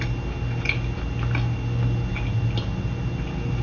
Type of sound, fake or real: real